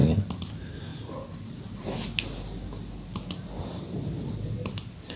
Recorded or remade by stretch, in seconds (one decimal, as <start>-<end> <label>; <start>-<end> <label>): 0.0-0.5 recorded; 0.5-0.9 remade; 0.9-3.8 recorded; 3.8-5.2 remade